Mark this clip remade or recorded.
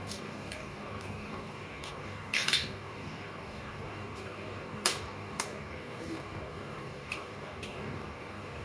remade